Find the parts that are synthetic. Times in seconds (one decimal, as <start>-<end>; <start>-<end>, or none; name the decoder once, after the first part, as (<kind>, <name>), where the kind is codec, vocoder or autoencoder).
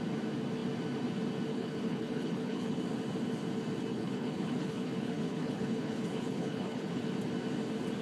1.5-2.8 (codec, HILCodec); 3.9-7.0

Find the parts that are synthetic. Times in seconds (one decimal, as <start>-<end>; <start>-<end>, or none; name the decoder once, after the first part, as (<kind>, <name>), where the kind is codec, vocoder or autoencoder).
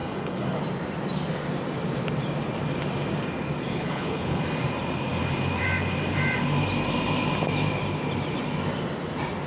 0.0-0.6 (codec, HILCodec); 3.7-4.4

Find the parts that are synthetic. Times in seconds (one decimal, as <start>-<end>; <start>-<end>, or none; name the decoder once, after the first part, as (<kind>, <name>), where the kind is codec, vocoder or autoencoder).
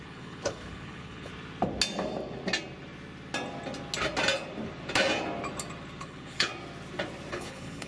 0.0-1.3 (codec, HILCodec); 6.0-6.5; 7.3-7.9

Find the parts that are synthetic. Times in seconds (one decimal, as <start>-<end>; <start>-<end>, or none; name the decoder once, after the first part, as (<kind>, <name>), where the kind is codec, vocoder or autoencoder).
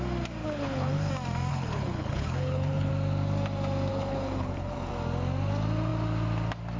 0.4-1.1 (codec, HILCodec); 1.5-2.9; 3.9-4.9